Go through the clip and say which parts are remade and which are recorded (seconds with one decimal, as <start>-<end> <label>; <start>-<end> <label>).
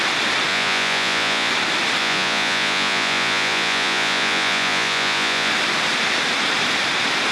0.0-0.5 recorded; 0.5-1.5 remade; 1.5-2.0 recorded; 2.0-5.5 remade; 5.5-7.3 recorded